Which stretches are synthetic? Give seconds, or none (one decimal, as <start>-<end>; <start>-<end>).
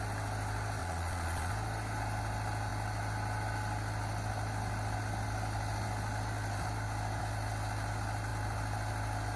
0.8-1.5